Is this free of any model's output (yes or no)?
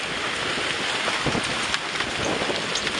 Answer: yes